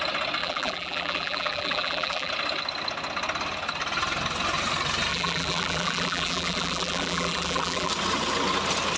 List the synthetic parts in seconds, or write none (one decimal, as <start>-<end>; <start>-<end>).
0.4-2.3; 5.1-7.9